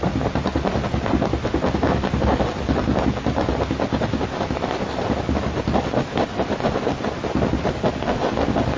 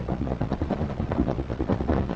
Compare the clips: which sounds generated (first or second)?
second